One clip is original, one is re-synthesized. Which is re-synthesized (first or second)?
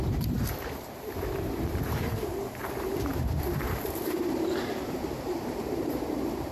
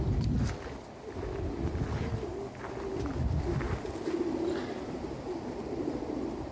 first